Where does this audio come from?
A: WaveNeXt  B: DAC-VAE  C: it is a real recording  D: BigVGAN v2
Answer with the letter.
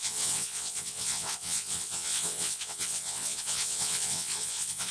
A